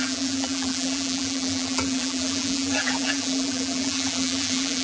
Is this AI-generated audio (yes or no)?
yes